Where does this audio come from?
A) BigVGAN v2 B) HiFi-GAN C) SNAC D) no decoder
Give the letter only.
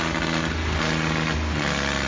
D